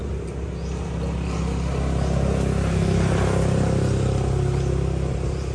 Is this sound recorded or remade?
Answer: recorded